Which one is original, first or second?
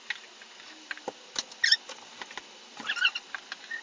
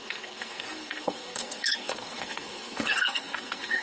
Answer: first